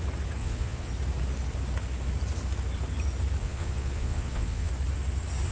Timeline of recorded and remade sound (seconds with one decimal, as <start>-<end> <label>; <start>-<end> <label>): 0.0-0.4 recorded; 0.4-0.9 remade; 0.9-3.4 recorded; 3.4-4.7 remade; 4.7-5.5 recorded